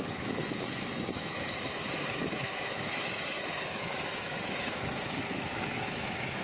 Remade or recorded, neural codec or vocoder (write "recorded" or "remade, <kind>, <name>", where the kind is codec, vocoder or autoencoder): remade, autoencoder, DAC-VAE